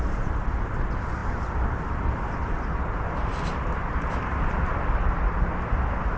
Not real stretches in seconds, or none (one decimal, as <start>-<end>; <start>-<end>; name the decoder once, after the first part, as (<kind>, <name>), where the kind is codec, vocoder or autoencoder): none